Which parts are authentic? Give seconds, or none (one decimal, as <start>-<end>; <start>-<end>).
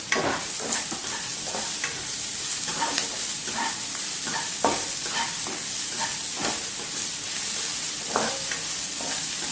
0.0-9.5